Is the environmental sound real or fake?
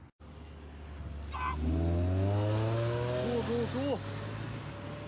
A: real